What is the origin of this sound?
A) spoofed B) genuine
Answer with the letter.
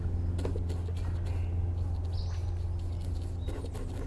B